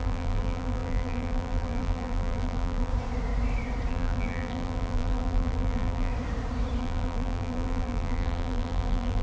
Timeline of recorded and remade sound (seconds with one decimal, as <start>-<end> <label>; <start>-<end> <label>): 0.0-2.9 remade; 2.9-3.9 recorded; 3.9-6.1 remade; 6.1-6.8 recorded; 6.8-9.2 remade